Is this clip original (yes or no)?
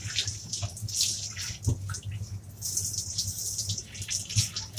yes